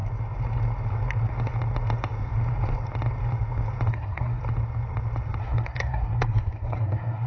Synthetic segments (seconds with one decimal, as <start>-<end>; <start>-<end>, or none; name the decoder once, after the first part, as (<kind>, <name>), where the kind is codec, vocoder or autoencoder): 3.9-4.4 (codec, SNAC); 5.4-7.3

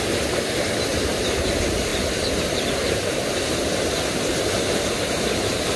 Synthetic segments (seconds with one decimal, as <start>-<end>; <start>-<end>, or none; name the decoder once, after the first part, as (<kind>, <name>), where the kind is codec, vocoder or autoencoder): 0.0-5.8 (vocoder, BigVGAN v2)

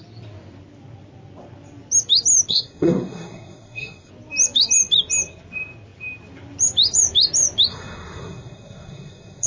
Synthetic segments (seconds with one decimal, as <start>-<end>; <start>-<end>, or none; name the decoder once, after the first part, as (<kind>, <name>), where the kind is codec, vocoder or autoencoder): 2.5-4.1 (codec, SNAC); 7.7-9.5

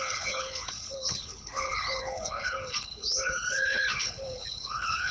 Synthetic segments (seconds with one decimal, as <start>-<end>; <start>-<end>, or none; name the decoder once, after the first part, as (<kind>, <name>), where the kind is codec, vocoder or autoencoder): 0.0-5.1 (codec, HILCodec)

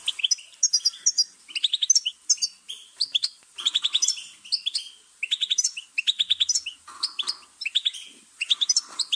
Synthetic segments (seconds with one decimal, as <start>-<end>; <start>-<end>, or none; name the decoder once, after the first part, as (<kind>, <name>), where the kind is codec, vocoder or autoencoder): none